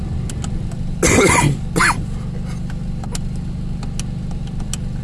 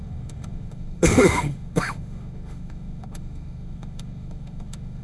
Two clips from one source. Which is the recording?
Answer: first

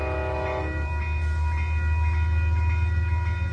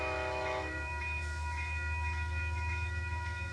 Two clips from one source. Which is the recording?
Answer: first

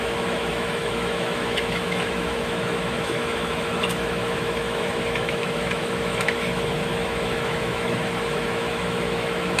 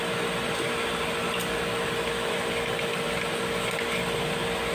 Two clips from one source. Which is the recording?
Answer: second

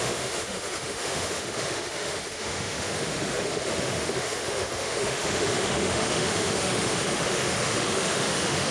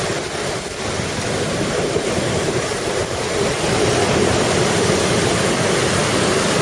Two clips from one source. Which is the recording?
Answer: second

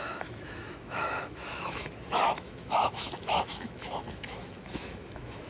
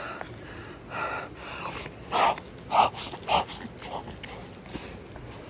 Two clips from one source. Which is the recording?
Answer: second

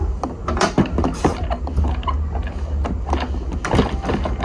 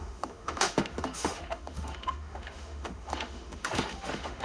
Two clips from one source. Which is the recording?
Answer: first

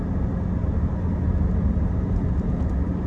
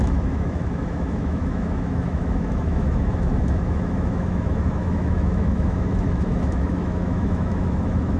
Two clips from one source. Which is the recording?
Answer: first